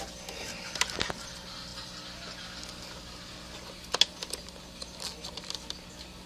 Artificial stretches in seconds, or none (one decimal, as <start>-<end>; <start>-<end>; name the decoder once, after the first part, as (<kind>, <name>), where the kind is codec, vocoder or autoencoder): none